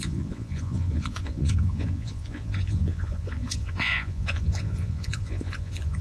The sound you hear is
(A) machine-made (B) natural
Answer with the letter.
A